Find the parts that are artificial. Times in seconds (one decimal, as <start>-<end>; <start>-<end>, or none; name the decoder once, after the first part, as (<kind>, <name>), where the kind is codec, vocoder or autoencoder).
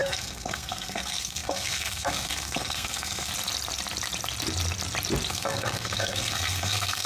0.0-3.3 (codec, SNAC); 5.3-7.1